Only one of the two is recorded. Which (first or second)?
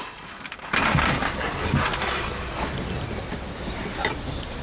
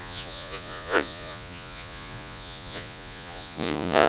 first